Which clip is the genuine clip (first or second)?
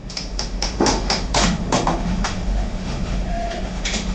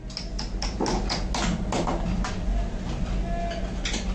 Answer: second